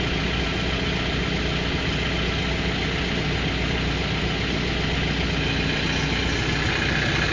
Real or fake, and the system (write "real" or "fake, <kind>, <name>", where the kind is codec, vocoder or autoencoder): real